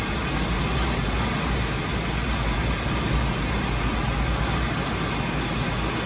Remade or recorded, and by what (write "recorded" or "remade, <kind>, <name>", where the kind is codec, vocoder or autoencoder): recorded